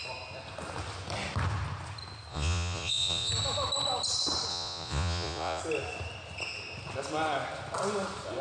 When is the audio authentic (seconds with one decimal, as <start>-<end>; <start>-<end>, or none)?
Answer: 0.0-2.3; 3.3-4.5; 5.6-8.4